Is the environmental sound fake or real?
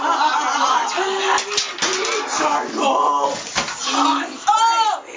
real